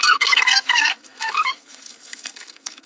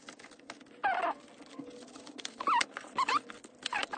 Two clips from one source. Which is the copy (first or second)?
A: first